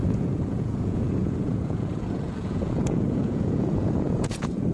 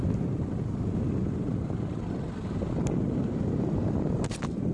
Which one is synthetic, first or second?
first